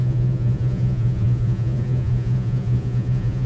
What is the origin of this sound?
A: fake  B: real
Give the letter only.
A